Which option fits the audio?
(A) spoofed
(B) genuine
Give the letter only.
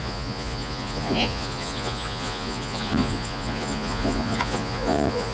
A